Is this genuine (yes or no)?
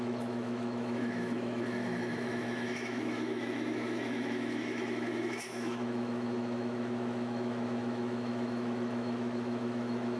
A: no